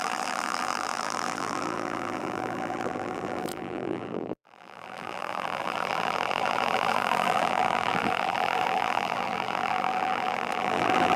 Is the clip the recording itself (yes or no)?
no